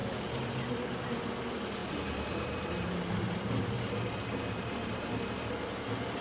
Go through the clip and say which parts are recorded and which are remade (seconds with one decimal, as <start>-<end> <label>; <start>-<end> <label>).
0.0-1.8 recorded; 1.8-5.5 remade; 5.5-6.2 recorded